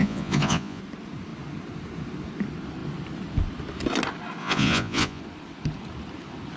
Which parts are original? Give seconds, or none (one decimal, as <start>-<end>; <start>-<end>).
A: 0.8-4.4; 5.2-6.6